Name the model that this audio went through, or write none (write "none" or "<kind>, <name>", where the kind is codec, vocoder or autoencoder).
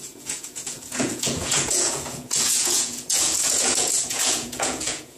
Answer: vocoder, Vocos